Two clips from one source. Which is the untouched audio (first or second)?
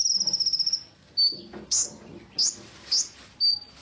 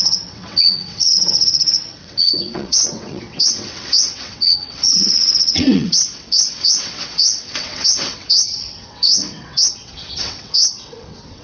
first